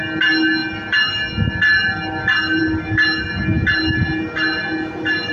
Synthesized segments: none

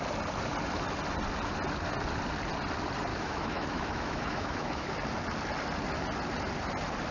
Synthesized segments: 3.1-4.9 (autoencoder, DAC-VAE)

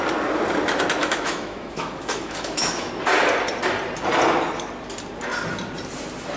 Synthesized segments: 1.0-2.9 (autoencoder, DAC-VAE)